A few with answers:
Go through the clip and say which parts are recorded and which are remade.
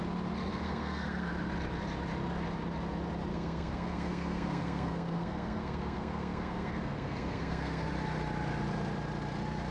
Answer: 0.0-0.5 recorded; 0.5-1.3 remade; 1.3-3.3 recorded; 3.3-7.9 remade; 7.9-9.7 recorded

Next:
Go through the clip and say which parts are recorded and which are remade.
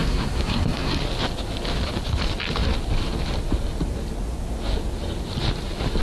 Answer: 0.0-1.0 remade; 1.0-6.0 recorded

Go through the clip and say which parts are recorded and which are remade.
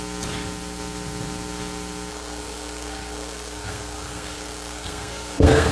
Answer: 0.0-2.1 recorded; 2.1-5.7 remade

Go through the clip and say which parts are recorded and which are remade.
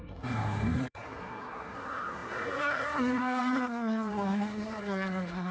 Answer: 0.0-5.5 remade